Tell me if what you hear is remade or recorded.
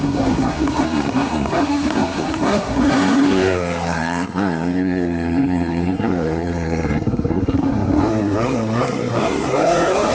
remade